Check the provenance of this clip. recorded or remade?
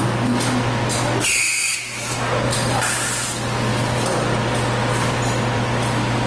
recorded